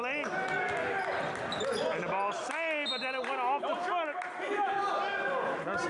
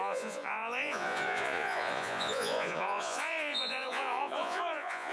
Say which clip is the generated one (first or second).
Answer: second